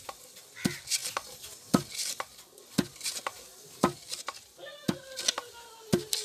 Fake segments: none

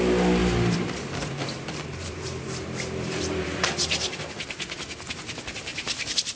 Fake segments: 0.4-4.2 (vocoder, BigVGAN v2); 5.7-6.4

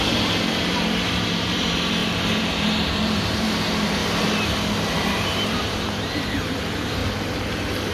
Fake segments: 0.0-4.0 (vocoder, BigVGAN v2); 5.1-7.0

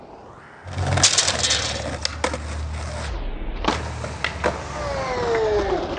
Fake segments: none

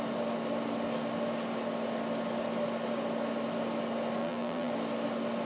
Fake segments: 4.2-4.7 (vocoder, BigVGAN v2)

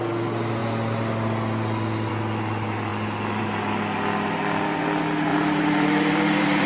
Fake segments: 5.3-6.7 (vocoder, BigVGAN v2)

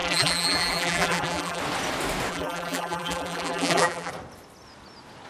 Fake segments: 0.0-1.6 (vocoder, BigVGAN v2); 2.3-4.1

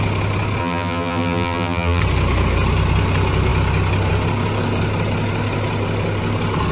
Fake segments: 0.6-2.0 (vocoder, BigVGAN v2)